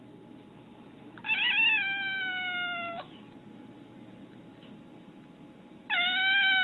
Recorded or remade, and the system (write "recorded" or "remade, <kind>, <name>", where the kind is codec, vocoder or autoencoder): recorded